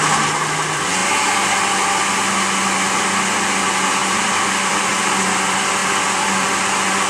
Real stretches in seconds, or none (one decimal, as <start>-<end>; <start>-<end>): 0.0-5.8